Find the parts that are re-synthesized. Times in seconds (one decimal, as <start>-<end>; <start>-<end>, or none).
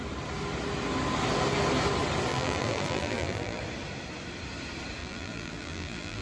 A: 2.3-3.6; 5.0-6.2